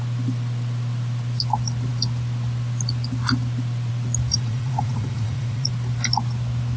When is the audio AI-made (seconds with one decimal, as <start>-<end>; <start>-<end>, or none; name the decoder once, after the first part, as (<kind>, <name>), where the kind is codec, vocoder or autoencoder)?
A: 4.3-5.7 (vocoder, Vocos)